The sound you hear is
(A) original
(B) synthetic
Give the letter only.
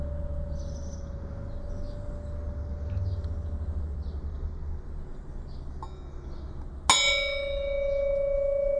A